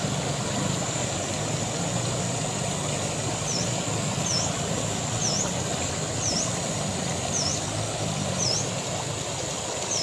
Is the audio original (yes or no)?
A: yes